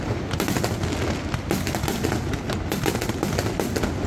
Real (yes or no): yes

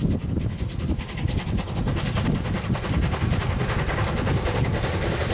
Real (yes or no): yes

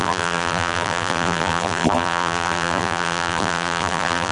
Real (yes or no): no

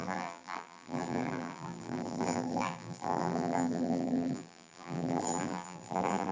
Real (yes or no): no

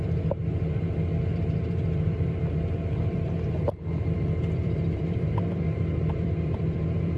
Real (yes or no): no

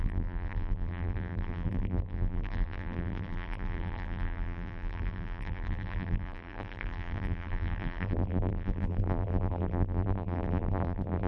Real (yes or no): no